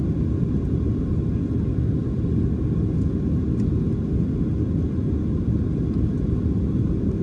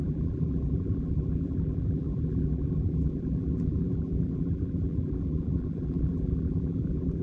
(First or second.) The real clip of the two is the first